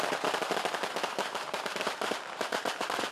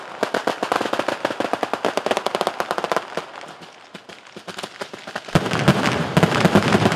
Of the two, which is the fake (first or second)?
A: first